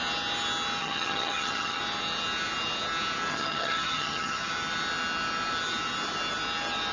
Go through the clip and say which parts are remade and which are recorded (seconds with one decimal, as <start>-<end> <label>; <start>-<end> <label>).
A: 0.0-0.8 recorded; 0.8-1.8 remade; 1.8-3.3 recorded; 3.3-4.5 remade; 4.5-6.9 recorded

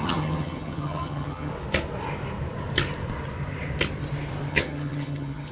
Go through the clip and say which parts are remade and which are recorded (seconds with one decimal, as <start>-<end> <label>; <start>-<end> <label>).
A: 0.0-1.5 remade; 1.5-4.5 recorded; 4.5-5.5 remade

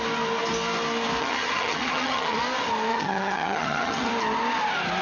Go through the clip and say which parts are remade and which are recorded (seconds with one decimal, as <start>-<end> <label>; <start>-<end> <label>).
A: 0.0-1.2 recorded; 1.2-2.4 remade; 2.4-2.9 recorded; 2.9-4.1 remade; 4.1-5.0 recorded

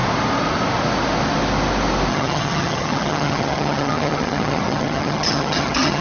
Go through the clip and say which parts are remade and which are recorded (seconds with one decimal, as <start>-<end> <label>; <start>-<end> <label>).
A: 0.0-2.1 recorded; 2.1-6.0 remade

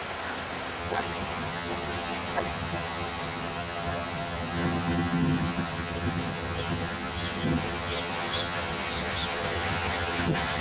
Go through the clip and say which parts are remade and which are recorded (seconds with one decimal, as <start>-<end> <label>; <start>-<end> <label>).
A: 0.0-0.8 recorded; 0.8-10.6 remade

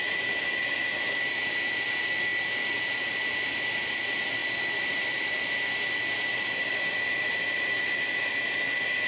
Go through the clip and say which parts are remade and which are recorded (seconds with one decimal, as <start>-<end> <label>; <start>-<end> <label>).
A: 0.0-9.1 recorded

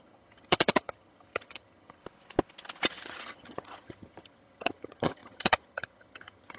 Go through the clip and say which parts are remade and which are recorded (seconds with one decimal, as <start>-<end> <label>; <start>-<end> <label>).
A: 0.0-2.0 remade; 2.0-2.9 recorded; 2.9-6.6 remade